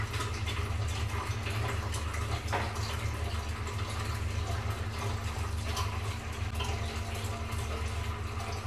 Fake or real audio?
real